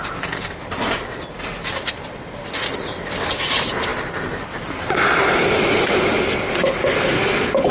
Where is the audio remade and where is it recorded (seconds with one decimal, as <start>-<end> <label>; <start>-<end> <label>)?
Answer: 0.0-7.7 recorded